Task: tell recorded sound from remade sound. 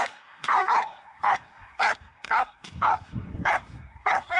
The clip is remade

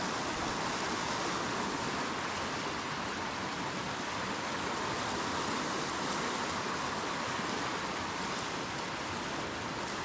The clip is recorded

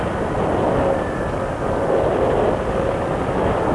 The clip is recorded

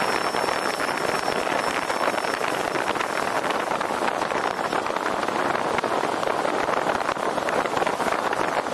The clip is recorded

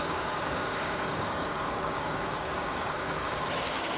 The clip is remade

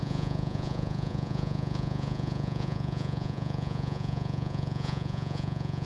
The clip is remade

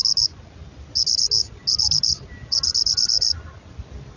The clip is recorded